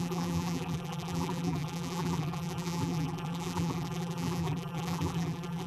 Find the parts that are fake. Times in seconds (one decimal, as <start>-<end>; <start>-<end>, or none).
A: 0.0-5.7